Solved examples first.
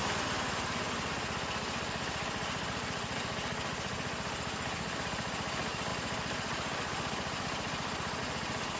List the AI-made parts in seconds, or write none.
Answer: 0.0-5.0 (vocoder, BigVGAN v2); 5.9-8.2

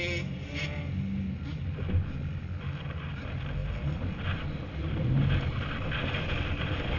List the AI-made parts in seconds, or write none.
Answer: none